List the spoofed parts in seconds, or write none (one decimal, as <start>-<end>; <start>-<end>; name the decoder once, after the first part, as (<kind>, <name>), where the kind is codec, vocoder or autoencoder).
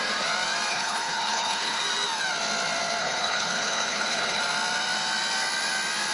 0.7-1.8 (codec, HILCodec); 3.0-4.4